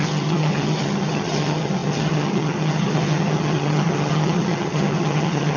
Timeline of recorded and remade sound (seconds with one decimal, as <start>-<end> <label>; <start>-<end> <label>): 0.0-5.6 remade